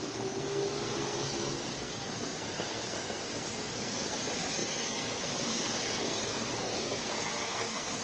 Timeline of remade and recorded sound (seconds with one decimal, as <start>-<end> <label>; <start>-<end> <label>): 0.0-8.0 remade